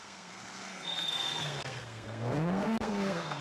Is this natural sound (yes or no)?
no